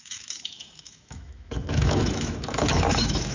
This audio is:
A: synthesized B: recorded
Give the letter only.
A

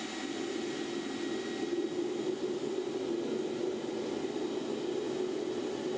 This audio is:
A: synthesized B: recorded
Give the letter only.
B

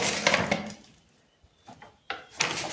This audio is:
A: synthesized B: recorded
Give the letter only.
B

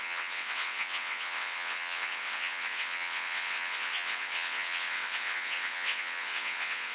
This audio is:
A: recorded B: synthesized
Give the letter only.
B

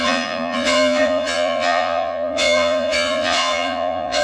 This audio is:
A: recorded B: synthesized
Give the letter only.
B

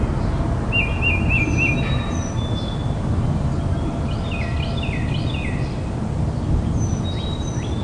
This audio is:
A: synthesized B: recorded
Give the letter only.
B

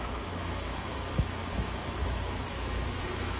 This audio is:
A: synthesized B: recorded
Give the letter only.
A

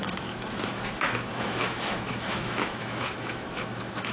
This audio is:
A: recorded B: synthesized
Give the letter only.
B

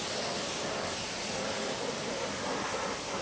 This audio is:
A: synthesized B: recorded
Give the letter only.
B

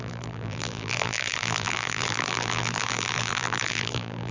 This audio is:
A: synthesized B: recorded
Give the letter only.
A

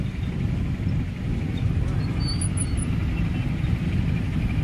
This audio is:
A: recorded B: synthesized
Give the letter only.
A